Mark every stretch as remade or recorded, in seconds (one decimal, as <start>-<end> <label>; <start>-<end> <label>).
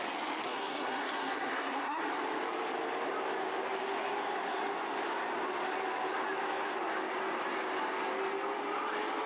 0.0-0.4 recorded; 0.4-2.0 remade; 2.0-9.3 recorded